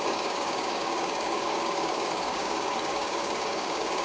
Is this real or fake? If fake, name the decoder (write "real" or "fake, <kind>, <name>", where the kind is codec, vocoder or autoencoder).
fake, codec, DAC